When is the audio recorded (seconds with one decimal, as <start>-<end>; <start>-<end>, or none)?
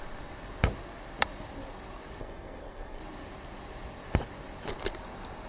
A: 0.0-2.2; 3.0-5.5